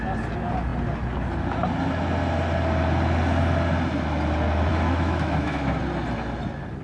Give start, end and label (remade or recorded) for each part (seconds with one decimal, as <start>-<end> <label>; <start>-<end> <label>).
0.0-4.7 recorded; 4.7-5.8 remade; 5.8-6.8 recorded